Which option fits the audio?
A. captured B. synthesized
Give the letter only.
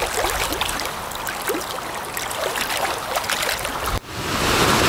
A